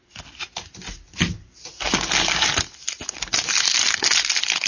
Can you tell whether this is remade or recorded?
recorded